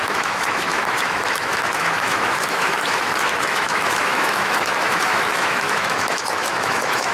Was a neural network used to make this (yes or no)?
yes